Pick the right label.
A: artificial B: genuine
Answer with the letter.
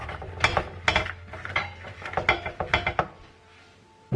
B